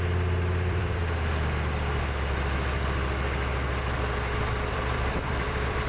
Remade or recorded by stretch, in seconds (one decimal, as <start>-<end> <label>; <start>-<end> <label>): 0.0-1.0 remade; 1.0-4.4 recorded; 4.4-5.9 remade